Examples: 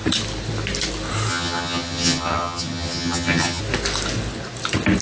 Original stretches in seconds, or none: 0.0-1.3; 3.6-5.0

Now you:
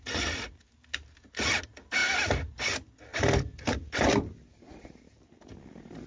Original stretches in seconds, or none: 0.0-6.1

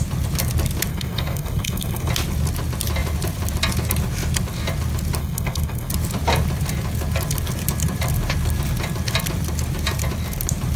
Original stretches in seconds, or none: 0.0-0.9; 2.1-5.2; 5.9-10.8

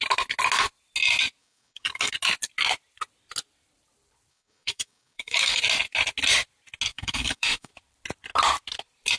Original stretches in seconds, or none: 0.0-1.4; 2.1-4.3; 5.6-6.9; 7.7-9.2

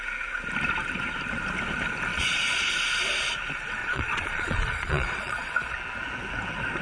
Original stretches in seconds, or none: 0.0-2.1; 2.7-3.8; 5.4-6.8

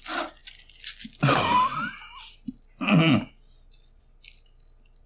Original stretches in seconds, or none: 0.0-5.1